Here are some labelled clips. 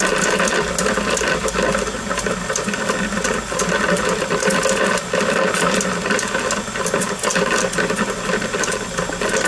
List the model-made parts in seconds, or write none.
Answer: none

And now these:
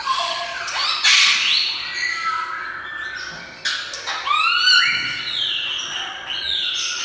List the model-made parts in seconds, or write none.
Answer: 0.0-1.9; 4.7-7.0